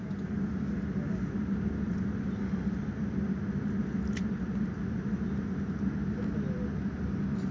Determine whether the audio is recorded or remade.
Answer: recorded